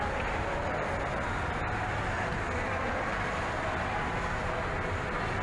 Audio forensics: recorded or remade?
recorded